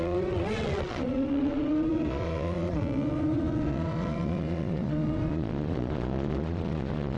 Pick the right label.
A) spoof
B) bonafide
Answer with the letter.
A